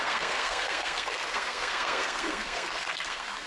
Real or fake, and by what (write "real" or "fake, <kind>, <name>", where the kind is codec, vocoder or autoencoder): fake, codec, SNAC